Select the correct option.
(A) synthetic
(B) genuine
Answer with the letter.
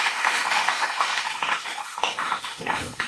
A